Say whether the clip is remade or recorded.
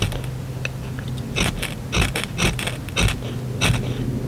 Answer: recorded